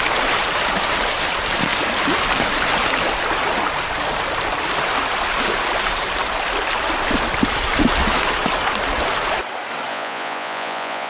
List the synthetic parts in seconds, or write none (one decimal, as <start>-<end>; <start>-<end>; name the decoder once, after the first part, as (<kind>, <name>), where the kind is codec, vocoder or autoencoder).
9.9-11.1 (vocoder, Vocos)

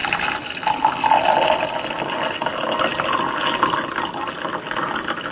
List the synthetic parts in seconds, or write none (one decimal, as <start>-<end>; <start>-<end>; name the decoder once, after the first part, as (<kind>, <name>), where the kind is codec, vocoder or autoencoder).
none

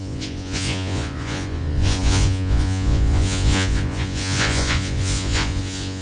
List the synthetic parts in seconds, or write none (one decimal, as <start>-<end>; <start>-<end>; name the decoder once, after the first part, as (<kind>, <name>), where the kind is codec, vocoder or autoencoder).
0.0-6.0 (vocoder, Vocos)

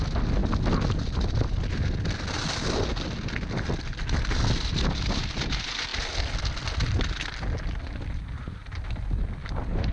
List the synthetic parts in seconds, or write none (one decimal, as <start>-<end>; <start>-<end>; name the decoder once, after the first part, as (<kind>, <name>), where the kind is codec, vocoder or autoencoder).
none

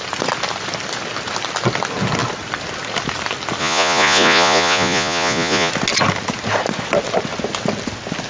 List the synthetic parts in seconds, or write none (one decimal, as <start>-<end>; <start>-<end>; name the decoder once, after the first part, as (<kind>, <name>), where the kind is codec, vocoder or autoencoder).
3.6-5.7 (vocoder, Vocos)

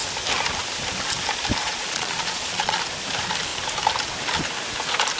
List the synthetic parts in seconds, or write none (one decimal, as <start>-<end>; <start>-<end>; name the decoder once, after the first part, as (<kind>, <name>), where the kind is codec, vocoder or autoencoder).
1.6-2.8 (vocoder, Vocos)

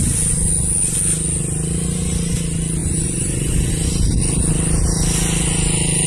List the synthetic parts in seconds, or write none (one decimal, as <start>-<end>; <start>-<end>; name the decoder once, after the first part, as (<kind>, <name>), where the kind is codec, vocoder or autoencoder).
2.8-3.7 (vocoder, Vocos)

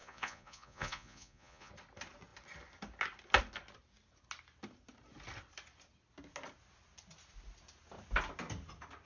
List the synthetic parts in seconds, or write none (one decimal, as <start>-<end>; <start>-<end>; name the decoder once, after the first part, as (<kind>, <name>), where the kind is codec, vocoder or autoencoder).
0.0-1.7 (vocoder, Vocos)